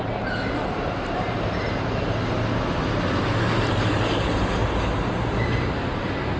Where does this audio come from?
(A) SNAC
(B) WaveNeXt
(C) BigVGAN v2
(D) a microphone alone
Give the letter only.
D